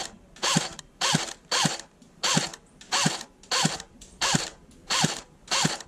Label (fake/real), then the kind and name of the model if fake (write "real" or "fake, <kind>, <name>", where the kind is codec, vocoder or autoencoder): fake, vocoder, BigVGAN v2